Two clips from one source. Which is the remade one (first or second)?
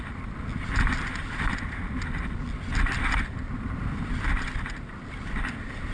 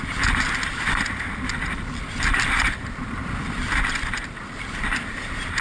second